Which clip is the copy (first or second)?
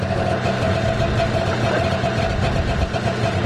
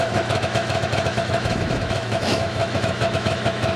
second